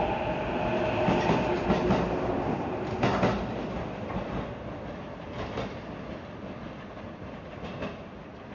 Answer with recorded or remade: recorded